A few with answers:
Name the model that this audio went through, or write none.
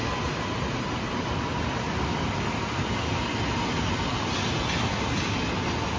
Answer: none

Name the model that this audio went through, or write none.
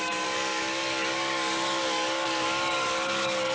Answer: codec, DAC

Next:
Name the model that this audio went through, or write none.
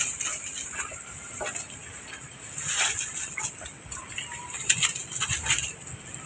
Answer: none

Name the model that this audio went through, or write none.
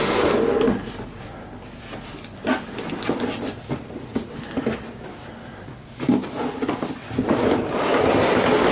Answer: none